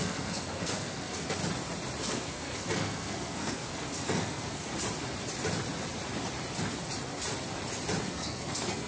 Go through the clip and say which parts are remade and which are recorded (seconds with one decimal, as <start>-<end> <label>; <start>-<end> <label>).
0.0-1.4 remade; 1.4-2.0 recorded; 2.0-4.7 remade; 4.7-8.0 recorded; 8.0-8.9 remade